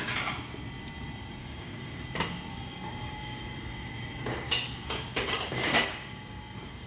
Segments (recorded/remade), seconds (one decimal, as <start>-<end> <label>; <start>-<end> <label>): 0.0-1.4 recorded; 1.4-2.0 remade; 2.0-2.5 recorded; 2.5-6.9 remade